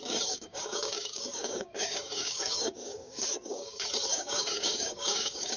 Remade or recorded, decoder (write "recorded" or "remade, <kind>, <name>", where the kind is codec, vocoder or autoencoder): remade, codec, DAC